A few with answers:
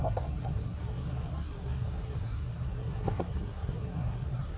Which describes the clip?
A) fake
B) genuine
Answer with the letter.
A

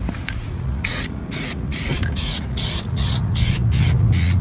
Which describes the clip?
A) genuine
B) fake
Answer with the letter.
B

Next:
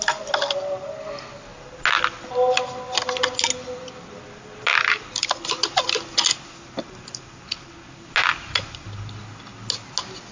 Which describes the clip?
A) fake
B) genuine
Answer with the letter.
B